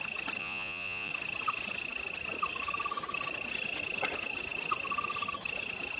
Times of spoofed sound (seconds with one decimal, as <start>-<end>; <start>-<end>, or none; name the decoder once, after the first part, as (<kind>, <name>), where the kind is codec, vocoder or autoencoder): 0.4-1.1 (vocoder, Vocos)